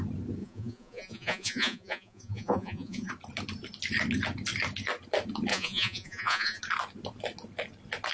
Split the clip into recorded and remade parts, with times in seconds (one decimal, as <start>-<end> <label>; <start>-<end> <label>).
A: 0.0-0.4 recorded; 0.4-3.1 remade; 3.1-5.5 recorded; 5.5-6.6 remade; 6.6-8.1 recorded